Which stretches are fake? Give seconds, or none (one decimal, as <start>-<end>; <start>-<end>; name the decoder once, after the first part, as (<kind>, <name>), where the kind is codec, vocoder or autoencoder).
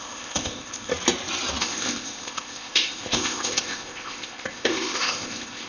0.0-0.9 (codec, ZipCodec); 1.6-5.7